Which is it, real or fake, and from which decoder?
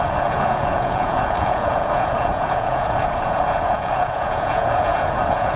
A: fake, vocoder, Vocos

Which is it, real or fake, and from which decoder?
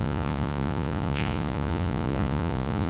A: fake, vocoder, Vocos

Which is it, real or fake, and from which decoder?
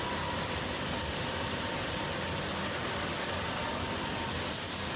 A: real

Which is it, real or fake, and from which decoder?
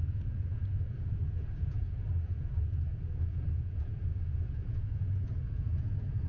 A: fake, vocoder, Vocos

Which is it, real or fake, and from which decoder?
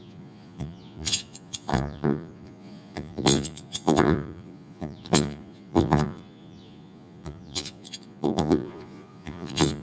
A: fake, vocoder, Vocos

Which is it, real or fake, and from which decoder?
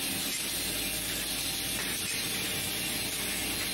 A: real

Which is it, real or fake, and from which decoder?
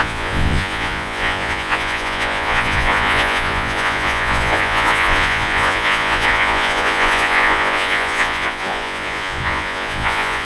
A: fake, vocoder, Vocos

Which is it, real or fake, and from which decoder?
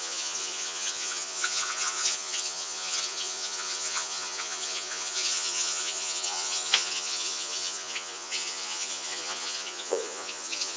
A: fake, vocoder, Vocos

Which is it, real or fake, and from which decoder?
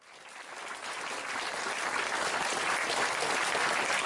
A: real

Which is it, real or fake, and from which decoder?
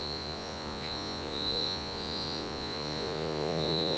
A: fake, vocoder, Vocos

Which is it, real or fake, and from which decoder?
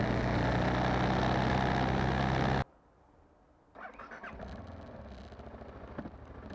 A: real